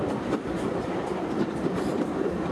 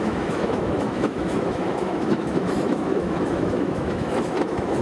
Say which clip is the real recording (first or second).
first